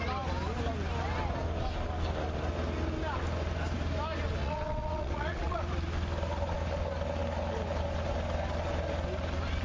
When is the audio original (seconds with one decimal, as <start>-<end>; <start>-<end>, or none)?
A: 0.0-4.4; 5.6-9.6

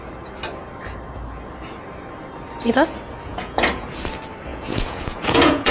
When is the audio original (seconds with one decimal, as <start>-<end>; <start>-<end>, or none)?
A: 0.0-3.3; 3.9-4.5

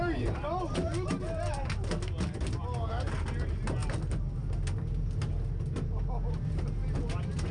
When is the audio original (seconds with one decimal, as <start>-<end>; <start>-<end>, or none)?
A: 0.0-7.5

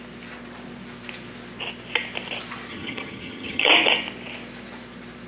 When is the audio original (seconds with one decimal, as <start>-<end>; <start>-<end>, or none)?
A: 0.0-2.7; 3.7-5.3

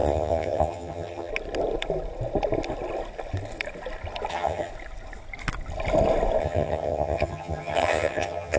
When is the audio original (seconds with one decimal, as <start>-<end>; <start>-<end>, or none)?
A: 1.3-4.3; 4.7-6.4

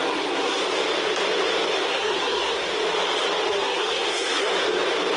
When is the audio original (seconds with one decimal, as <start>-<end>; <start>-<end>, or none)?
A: 0.6-1.8; 2.6-3.5; 4.5-5.2

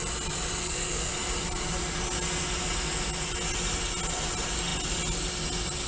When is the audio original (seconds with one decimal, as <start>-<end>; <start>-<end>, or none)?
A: 0.0-0.6; 1.1-5.9